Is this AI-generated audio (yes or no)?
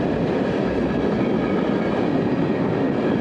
no